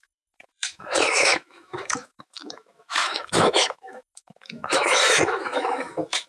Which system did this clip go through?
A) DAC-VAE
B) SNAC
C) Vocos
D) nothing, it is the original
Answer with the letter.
A